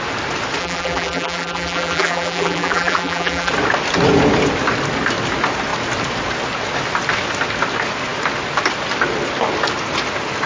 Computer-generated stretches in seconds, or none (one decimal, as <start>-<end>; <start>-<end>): 0.6-3.5